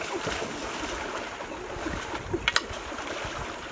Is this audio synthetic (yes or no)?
no